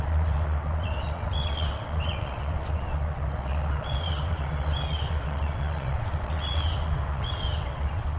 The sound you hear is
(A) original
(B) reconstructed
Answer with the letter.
B